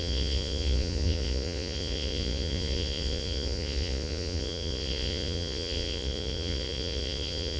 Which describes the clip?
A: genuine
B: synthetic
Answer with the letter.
B